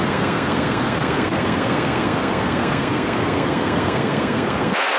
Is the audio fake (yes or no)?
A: yes